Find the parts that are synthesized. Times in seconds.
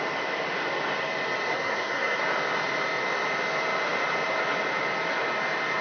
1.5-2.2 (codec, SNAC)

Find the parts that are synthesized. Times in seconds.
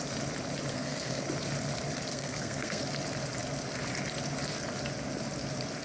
0.7-1.2 (codec, SNAC); 2.1-2.8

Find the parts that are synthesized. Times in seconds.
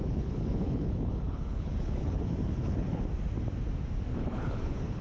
0.0-3.0 (codec, HILCodec); 4.1-5.0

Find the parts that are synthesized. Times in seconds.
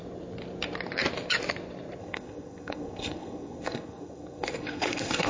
2.0-5.3 (codec, SNAC)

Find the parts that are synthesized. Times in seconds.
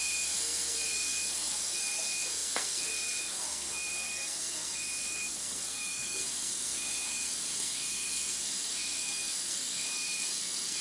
0.0-10.8 (codec, SNAC)